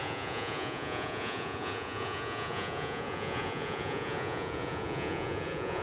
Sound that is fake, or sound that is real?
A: fake